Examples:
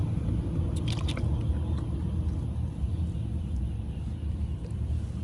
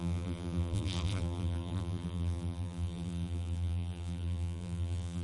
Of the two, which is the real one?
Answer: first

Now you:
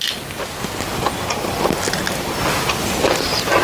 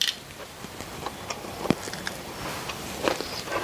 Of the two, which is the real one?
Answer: first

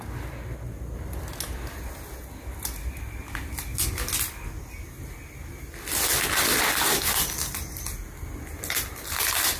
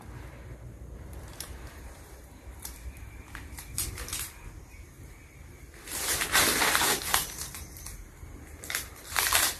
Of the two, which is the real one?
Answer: first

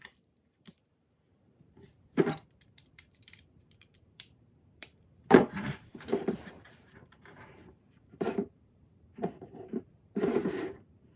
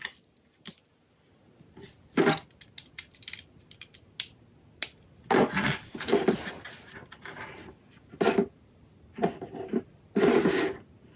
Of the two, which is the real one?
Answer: second